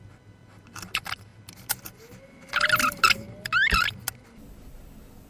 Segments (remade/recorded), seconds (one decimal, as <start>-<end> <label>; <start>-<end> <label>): 0.0-5.3 recorded

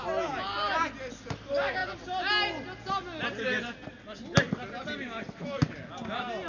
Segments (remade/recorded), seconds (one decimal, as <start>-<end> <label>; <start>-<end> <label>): 0.0-6.5 recorded

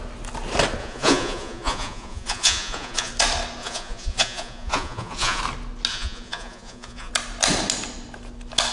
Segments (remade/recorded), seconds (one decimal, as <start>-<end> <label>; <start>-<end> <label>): 0.0-0.8 recorded; 0.8-3.1 remade; 3.1-3.6 recorded; 3.6-5.4 remade; 5.4-5.9 recorded; 5.9-7.1 remade; 7.1-8.7 recorded